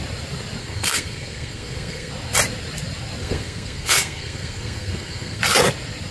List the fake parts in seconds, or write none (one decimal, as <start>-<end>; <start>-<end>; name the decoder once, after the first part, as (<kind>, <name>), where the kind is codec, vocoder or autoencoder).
0.6-2.1 (codec, SNAC); 3.2-5.4